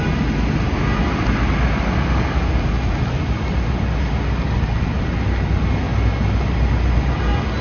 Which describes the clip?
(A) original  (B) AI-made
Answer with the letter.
A